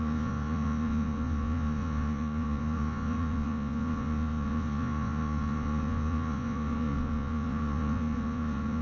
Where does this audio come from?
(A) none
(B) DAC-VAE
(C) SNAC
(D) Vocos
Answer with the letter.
D